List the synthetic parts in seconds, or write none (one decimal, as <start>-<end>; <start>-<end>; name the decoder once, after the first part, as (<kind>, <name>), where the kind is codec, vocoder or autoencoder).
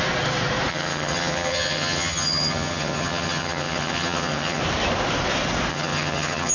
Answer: 0.7-4.6 (vocoder, HiFi-GAN); 5.7-6.5